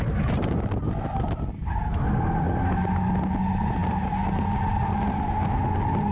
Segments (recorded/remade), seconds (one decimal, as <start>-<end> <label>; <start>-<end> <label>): 0.0-6.1 recorded